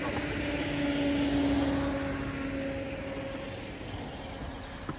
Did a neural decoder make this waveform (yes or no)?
no